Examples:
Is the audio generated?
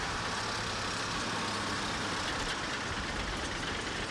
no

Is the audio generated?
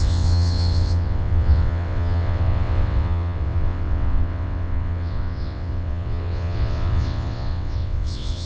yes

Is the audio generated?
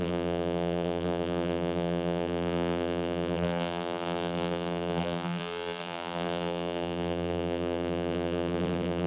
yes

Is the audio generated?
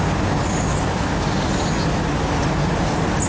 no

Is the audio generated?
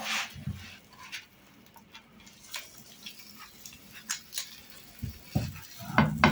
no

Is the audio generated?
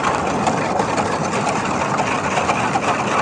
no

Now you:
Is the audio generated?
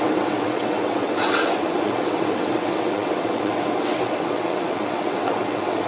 yes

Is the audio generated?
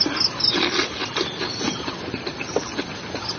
no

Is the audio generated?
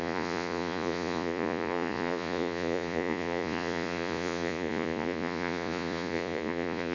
yes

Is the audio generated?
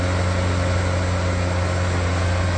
no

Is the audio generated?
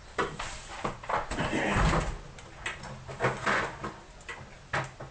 no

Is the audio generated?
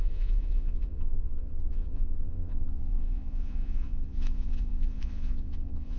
yes